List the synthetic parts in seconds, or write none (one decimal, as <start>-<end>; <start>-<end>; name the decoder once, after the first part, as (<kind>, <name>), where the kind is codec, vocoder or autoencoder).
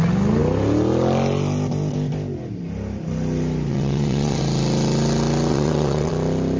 3.7-4.4 (vocoder, WaveNeXt); 5.5-6.1